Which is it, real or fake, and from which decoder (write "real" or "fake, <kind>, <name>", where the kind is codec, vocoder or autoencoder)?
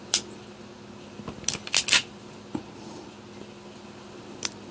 real